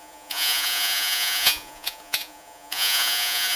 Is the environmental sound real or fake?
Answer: fake